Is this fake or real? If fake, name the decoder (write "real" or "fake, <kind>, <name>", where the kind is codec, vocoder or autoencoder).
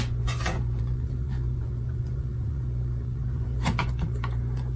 fake, vocoder, Vocos